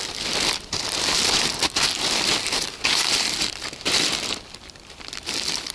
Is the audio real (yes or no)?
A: no